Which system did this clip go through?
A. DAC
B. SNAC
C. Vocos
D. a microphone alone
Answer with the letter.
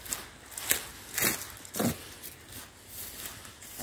D